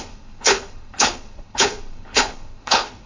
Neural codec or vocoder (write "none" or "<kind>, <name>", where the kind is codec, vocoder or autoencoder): codec, HILCodec